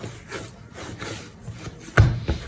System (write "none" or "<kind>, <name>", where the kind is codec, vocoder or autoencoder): none